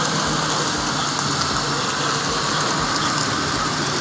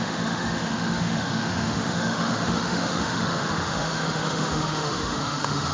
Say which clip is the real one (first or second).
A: first